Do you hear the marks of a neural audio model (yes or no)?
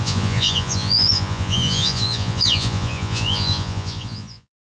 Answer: yes